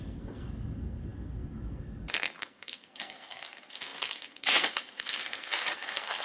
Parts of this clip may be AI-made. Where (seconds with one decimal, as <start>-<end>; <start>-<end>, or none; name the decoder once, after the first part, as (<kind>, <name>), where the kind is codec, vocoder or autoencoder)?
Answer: 0.0-6.2 (codec, SNAC)